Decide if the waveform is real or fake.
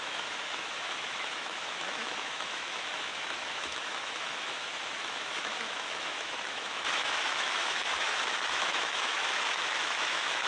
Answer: fake